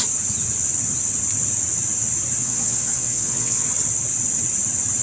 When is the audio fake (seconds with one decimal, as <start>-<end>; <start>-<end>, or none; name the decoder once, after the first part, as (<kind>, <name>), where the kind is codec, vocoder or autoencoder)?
2.4-3.6 (vocoder, WaveNeXt)